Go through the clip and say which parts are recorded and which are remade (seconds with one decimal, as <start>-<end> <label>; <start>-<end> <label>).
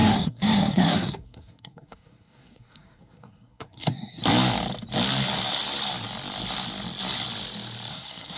0.0-4.2 remade; 4.2-7.9 recorded; 7.9-8.4 remade